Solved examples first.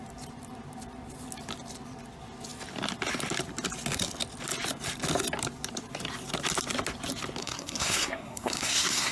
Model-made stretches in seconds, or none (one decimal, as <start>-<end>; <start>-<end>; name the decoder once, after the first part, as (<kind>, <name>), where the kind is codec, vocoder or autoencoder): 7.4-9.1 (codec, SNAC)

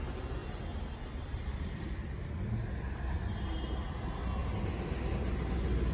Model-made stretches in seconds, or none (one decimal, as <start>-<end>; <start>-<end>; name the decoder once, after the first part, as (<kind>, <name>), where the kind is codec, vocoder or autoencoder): none

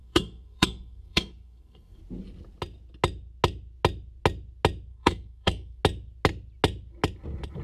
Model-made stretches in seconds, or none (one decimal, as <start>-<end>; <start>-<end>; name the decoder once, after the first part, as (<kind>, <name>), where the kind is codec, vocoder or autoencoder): 0.0-2.0 (codec, SNAC); 4.9-5.8

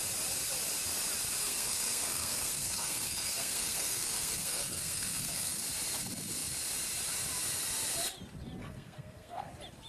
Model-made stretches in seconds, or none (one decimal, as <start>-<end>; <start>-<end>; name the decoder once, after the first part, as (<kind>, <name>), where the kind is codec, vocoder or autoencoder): 1.4-5.6 (codec, SNAC); 8.6-9.5

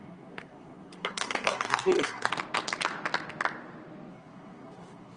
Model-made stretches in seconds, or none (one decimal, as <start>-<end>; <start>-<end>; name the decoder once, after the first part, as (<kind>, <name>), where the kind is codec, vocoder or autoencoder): 0.0-2.3 (codec, SNAC); 4.1-5.2